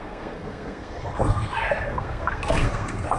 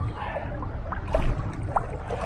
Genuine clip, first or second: second